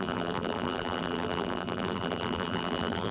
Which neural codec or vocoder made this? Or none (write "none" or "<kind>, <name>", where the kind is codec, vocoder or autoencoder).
vocoder, BigVGAN v2